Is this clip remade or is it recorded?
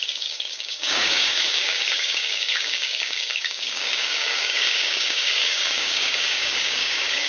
remade